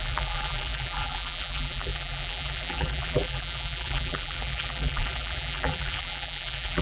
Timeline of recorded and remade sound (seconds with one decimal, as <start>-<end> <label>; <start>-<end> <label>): 0.0-6.8 remade